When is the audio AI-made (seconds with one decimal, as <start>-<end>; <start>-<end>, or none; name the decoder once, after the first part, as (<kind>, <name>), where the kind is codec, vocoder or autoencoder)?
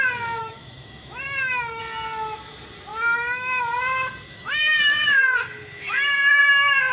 0.4-1.8 (autoencoder, DAC-VAE); 2.9-3.6; 4.3-6.4